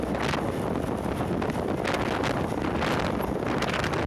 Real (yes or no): yes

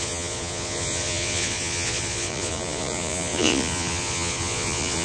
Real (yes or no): no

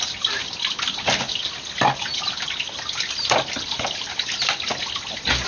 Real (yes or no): yes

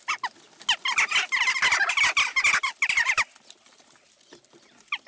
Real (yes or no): yes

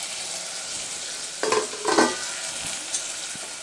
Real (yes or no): yes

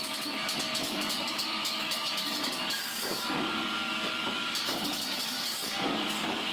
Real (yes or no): no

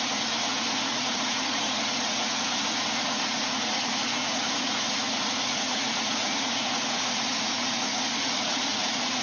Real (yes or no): no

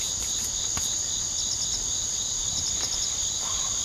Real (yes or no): yes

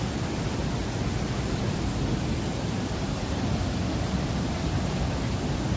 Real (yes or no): yes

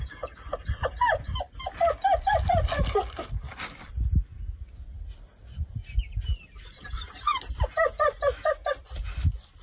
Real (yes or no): yes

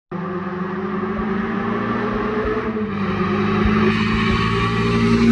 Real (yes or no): yes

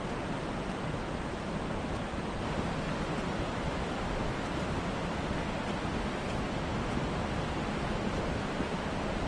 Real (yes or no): yes